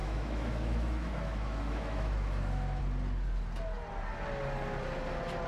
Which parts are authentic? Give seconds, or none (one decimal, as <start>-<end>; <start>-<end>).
2.8-5.5